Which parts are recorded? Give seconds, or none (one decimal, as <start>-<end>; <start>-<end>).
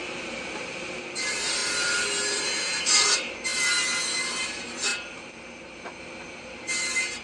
none